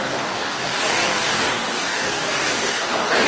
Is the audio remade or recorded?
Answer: remade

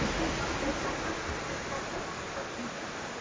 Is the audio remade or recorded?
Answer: recorded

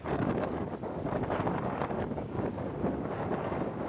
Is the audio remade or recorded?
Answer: remade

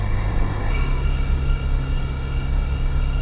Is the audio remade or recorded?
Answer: remade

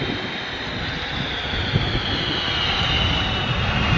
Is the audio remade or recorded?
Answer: recorded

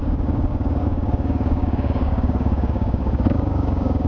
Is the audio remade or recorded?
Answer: remade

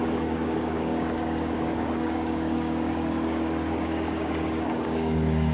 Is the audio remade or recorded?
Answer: remade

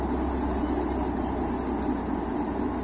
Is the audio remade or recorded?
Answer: recorded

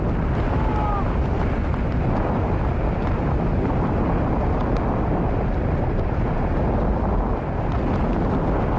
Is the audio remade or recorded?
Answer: recorded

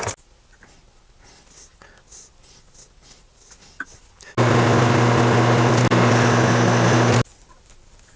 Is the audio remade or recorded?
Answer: recorded